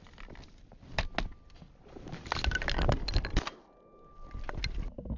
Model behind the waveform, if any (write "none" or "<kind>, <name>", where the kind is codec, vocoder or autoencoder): none